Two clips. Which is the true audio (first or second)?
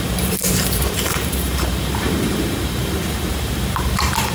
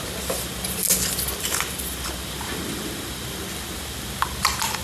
second